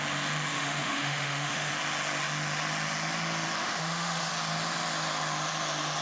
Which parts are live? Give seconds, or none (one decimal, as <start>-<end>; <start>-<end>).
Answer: 0.0-0.5; 1.7-3.6; 4.3-6.0

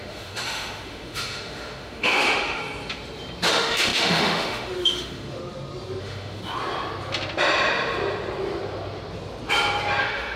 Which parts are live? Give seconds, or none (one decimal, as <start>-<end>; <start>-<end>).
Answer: 2.6-3.5; 5.4-6.0; 6.4-10.0

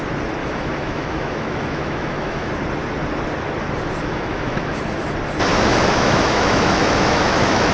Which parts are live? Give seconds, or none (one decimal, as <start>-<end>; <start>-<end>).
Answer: 0.0-0.4; 2.5-4.0; 4.8-5.5

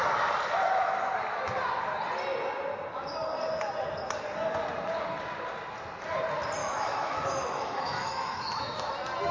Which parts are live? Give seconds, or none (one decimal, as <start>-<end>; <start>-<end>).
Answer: 0.0-6.6; 8.9-9.3

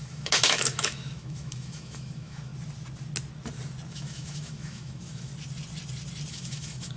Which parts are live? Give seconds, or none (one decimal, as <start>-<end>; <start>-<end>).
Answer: 2.5-3.9; 5.3-6.3

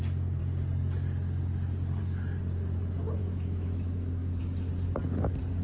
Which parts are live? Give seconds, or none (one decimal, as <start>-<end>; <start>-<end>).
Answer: 0.0-3.2; 4.4-5.6